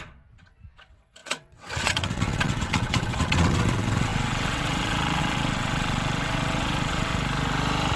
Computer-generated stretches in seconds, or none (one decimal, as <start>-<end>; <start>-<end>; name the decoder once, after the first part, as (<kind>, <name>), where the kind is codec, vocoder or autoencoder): 0.0-7.1 (vocoder, WaveNeXt)